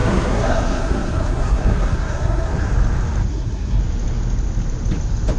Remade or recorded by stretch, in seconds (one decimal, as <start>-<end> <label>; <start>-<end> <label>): 0.0-2.7 remade; 2.7-3.3 recorded; 3.3-3.8 remade; 3.8-5.4 recorded